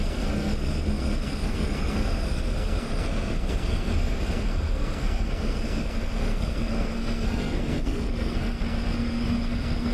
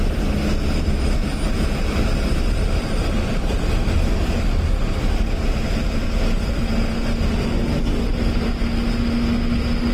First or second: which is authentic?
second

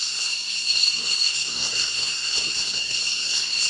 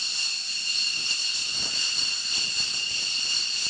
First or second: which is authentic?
second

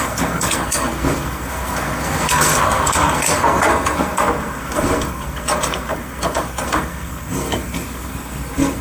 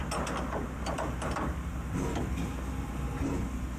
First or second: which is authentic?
second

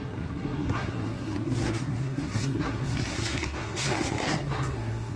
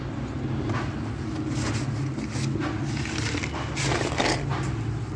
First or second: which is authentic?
second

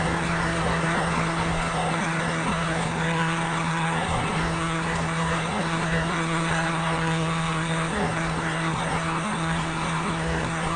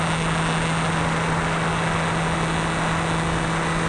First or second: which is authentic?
second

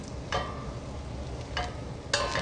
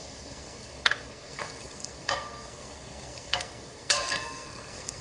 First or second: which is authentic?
first